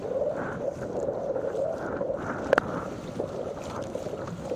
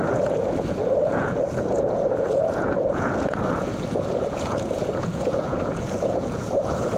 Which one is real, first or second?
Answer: first